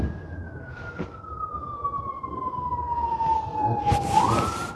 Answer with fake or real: real